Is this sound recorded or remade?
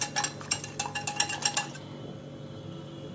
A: recorded